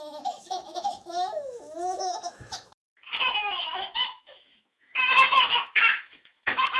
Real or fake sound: fake